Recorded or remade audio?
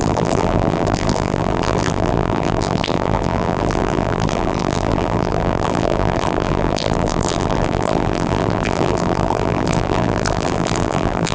remade